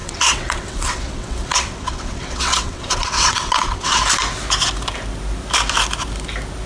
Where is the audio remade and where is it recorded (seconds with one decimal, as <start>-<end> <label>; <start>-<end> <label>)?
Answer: 0.0-4.0 remade; 4.0-6.7 recorded